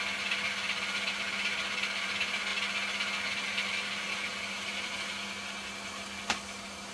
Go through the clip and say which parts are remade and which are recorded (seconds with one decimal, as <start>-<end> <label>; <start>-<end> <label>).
0.0-6.9 recorded